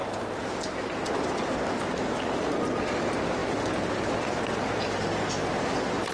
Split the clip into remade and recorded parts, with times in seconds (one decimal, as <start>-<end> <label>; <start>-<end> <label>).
0.0-6.1 recorded